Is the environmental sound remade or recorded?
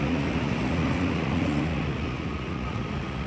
remade